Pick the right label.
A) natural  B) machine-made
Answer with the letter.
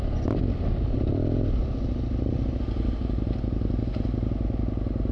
A